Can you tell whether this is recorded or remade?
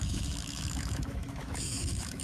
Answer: remade